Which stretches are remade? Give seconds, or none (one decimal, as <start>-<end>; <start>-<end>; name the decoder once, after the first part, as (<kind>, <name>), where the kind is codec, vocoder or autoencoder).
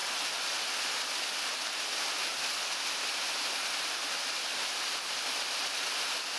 none